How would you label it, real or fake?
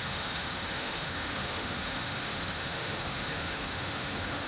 fake